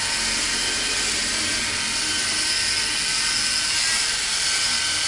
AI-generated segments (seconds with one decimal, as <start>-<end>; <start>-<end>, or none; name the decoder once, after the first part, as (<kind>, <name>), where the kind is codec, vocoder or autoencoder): none